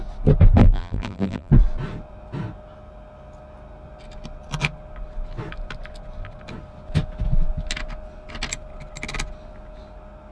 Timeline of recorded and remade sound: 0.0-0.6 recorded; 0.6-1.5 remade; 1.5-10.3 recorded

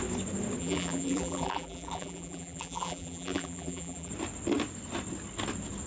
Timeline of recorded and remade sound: 0.0-0.6 recorded; 0.6-4.1 remade; 4.1-5.9 recorded

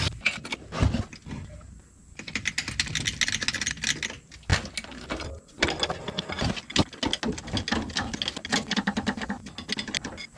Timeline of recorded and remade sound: 0.0-10.4 recorded

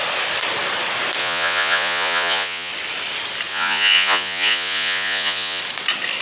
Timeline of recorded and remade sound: 0.0-1.2 recorded; 1.2-2.7 remade; 2.7-3.5 recorded; 3.5-5.6 remade; 5.6-6.2 recorded

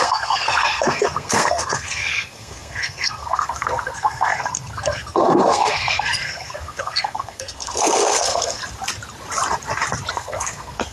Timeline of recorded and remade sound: 0.0-8.6 remade; 8.6-10.1 recorded; 10.1-10.9 remade

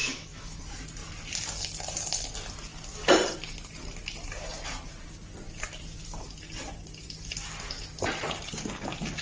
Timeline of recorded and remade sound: 0.0-0.6 remade; 0.6-9.2 recorded

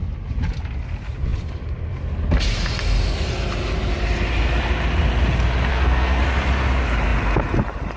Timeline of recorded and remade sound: 0.0-5.7 recorded; 5.7-6.2 remade; 6.2-8.0 recorded

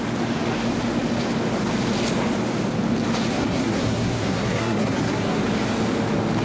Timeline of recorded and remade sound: 0.0-3.3 recorded; 3.3-5.4 remade; 5.4-6.4 recorded